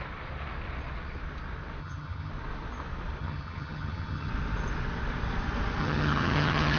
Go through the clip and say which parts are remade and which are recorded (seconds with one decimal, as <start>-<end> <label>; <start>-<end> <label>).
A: 0.0-1.8 recorded; 1.8-2.3 remade; 2.3-3.2 recorded; 3.2-4.3 remade; 4.3-5.8 recorded; 5.8-6.8 remade